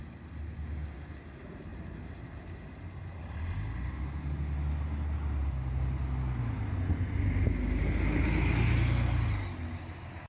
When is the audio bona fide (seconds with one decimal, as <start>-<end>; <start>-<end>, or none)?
0.0-10.3